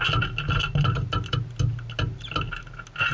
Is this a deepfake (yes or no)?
no